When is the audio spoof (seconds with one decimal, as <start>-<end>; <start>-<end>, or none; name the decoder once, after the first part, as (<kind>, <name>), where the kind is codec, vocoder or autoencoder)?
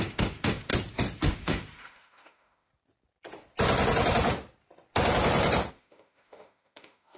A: 0.0-0.7 (autoencoder, DAC-VAE); 1.2-2.7; 5.7-7.2